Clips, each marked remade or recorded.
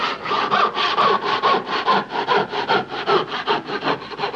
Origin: recorded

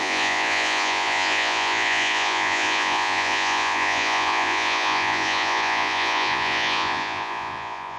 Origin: remade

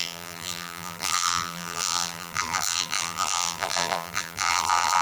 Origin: remade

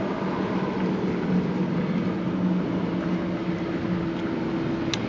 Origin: recorded